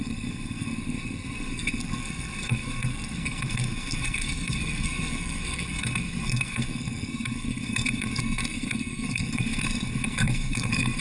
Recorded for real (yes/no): no